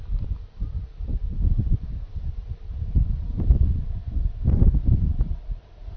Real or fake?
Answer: fake